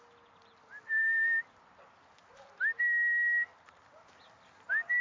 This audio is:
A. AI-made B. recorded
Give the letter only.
B